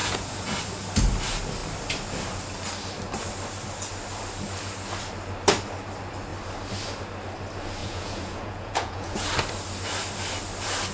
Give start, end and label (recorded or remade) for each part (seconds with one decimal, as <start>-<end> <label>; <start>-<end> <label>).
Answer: 0.0-0.6 remade; 0.6-7.8 recorded; 7.8-9.3 remade; 9.3-10.9 recorded